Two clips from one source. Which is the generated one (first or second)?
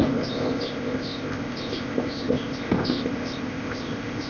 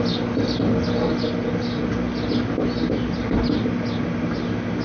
first